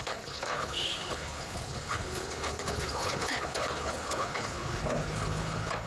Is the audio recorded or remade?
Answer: remade